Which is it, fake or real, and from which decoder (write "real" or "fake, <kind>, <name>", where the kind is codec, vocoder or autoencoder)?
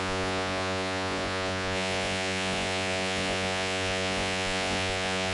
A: fake, vocoder, Vocos